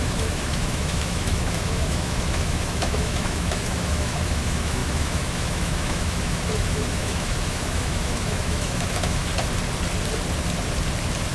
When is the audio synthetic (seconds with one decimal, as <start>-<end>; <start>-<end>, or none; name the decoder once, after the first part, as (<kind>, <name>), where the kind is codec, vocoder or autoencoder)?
0.0-9.3 (autoencoder, DAC-VAE)